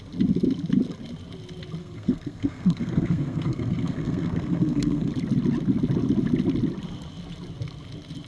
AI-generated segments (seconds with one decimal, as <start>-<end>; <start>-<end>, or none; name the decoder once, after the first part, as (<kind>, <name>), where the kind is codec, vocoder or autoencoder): 1.8-5.1 (codec, SNAC)